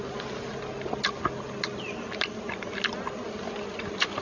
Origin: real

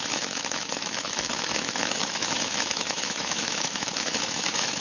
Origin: fake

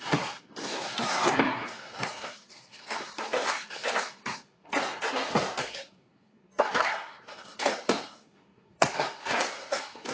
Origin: fake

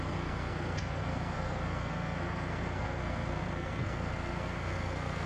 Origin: fake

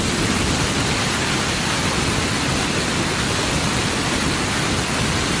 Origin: real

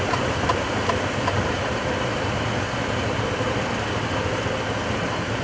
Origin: real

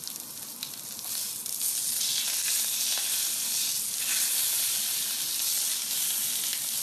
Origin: real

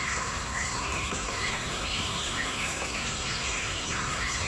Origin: fake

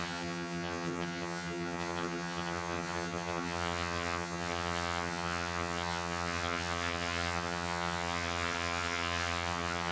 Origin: fake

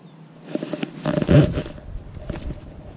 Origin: real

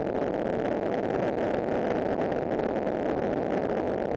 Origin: real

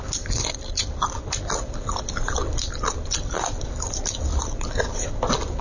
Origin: real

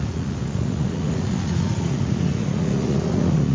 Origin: fake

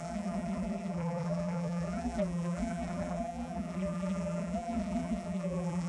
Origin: fake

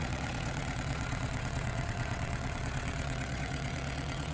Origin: fake